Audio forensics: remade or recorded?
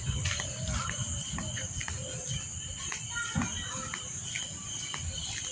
recorded